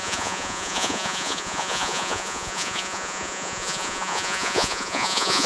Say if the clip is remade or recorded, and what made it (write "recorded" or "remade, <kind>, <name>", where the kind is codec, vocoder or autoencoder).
remade, vocoder, Vocos